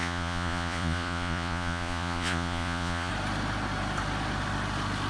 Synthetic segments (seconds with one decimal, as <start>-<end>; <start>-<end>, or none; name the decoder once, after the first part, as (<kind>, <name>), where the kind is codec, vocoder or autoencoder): 0.0-3.1 (vocoder, Vocos)